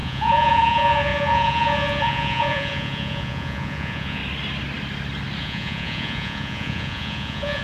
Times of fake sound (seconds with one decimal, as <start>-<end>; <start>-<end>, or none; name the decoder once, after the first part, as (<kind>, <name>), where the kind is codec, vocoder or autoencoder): 0.0-4.2 (vocoder, Vocos); 5.4-7.6